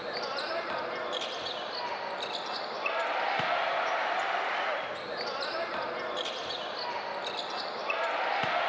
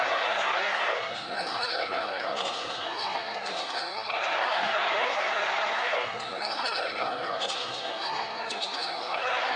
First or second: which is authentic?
first